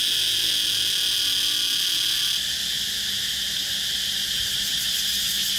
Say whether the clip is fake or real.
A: real